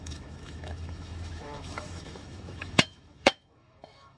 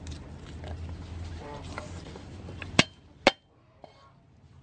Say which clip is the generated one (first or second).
first